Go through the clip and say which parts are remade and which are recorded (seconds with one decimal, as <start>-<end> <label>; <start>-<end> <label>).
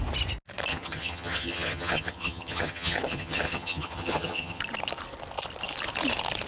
0.0-0.7 recorded; 0.7-4.6 remade; 4.6-6.5 recorded